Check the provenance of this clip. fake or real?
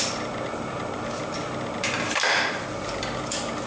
real